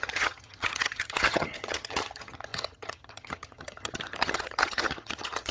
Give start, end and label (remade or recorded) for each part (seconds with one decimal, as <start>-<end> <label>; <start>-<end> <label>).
0.0-5.5 remade